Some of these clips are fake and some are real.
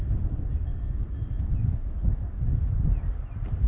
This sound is real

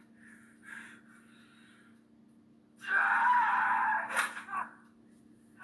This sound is real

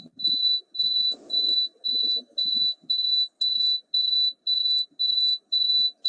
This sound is real